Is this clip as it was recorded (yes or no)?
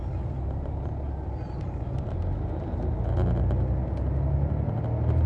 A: yes